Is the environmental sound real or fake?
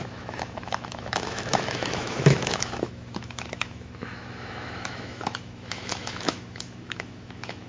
fake